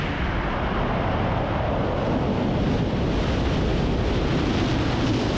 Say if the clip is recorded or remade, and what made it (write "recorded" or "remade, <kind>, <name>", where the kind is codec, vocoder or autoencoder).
recorded